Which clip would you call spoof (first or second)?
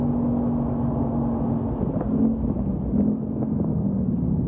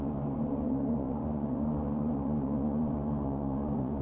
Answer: second